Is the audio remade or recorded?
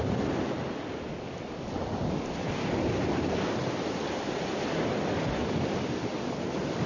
recorded